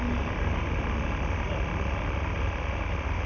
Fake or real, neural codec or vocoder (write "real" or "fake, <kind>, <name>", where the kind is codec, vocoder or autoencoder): real